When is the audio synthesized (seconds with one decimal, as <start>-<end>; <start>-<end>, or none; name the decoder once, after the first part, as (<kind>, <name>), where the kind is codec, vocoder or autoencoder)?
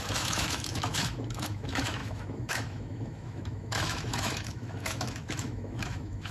0.0-6.3 (autoencoder, DAC-VAE)